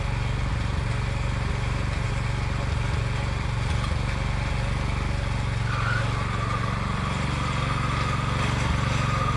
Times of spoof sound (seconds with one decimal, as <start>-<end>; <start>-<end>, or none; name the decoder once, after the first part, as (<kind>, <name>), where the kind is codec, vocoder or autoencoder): 0.5-2.1 (vocoder, BigVGAN v2)